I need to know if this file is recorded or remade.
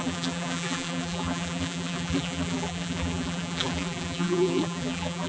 remade